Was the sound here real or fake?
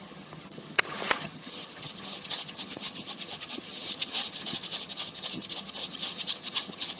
fake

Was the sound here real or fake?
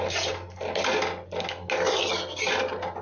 real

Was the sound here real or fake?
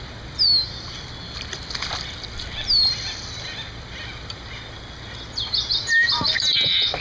real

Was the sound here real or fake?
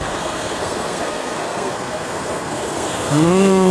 fake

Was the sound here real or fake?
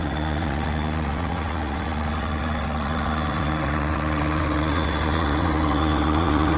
fake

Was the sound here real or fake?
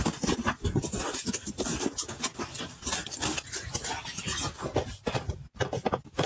real